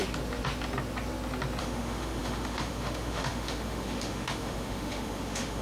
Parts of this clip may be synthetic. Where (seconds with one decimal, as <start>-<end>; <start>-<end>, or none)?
1.6-5.6